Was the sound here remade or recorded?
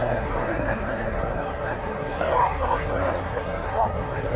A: remade